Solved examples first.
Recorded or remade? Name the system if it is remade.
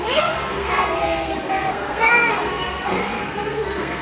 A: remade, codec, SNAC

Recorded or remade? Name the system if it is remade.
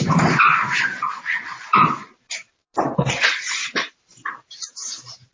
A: remade, vocoder, BigVGAN v2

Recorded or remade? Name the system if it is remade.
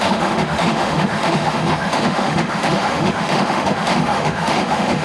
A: remade, autoencoder, DAC-VAE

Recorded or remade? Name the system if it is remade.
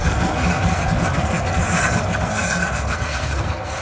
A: remade, codec, SNAC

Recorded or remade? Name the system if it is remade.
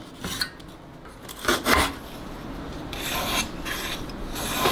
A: recorded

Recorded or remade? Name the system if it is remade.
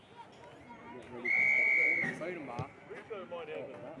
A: recorded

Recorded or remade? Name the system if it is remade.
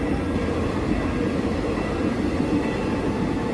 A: recorded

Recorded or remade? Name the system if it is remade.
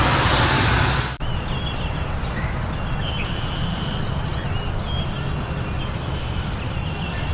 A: recorded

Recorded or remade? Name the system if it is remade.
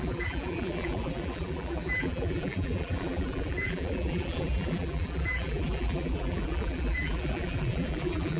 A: remade, vocoder, BigVGAN v2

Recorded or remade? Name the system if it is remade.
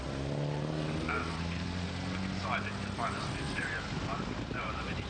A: remade, vocoder, BigVGAN v2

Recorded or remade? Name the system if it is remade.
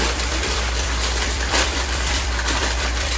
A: remade, vocoder, BigVGAN v2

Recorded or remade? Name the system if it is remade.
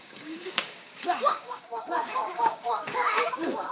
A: remade, codec, DAC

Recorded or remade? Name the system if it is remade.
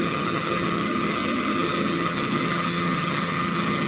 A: remade, vocoder, HiFi-GAN